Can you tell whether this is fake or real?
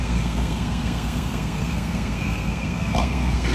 fake